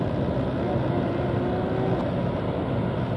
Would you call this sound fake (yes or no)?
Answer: no